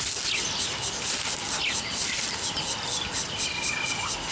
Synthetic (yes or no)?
no